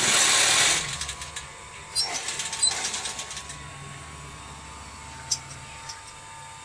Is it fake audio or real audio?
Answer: real